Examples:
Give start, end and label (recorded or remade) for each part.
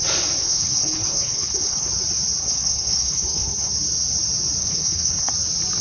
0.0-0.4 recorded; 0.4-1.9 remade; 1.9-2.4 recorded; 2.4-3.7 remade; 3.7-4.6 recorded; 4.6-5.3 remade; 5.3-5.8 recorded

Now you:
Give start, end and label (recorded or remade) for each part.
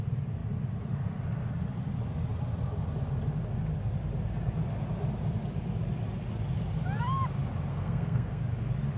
0.0-7.7 recorded; 7.7-8.4 remade; 8.4-9.0 recorded